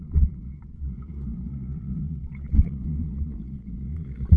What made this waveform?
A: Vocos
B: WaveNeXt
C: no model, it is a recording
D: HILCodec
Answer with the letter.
A